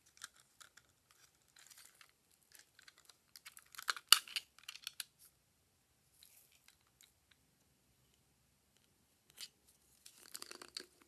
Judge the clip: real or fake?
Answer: real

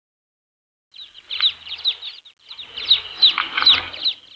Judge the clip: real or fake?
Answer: real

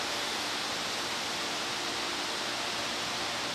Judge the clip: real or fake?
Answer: real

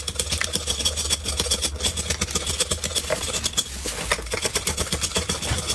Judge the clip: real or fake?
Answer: real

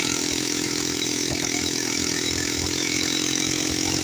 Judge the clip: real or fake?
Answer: fake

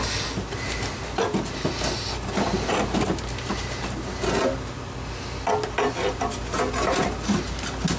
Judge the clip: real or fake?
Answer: real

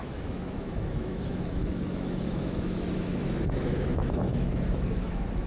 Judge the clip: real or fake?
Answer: fake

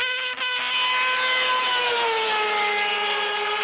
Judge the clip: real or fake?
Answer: real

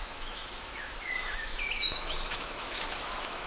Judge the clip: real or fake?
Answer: fake